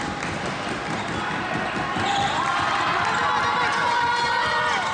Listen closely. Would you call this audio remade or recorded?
recorded